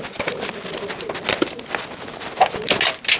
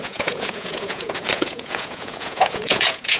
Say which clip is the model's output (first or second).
second